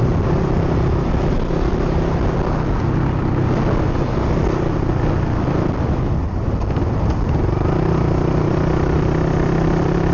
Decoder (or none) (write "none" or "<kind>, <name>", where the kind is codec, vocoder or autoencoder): none